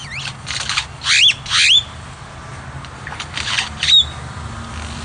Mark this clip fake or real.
real